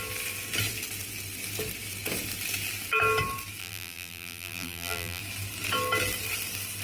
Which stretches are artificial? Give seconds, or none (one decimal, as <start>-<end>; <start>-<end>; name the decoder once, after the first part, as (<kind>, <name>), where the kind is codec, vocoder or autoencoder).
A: 3.6-5.2 (vocoder, BigVGAN v2)